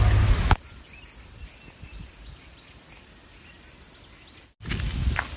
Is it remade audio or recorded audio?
recorded